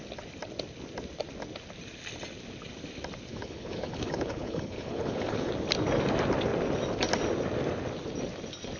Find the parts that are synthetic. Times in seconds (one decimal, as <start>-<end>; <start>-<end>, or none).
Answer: 3.3-5.5